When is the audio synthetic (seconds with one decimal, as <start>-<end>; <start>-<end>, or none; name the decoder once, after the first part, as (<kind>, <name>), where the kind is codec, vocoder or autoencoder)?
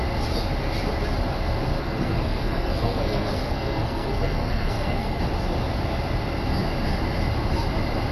1.8-5.2 (codec, SNAC)